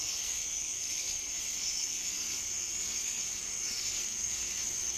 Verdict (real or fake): fake